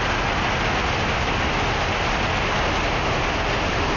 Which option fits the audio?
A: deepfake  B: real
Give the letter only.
B